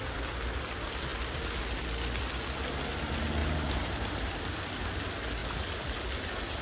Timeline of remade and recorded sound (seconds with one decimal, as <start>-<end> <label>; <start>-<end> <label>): 0.0-3.4 recorded; 3.4-4.6 remade; 4.6-6.6 recorded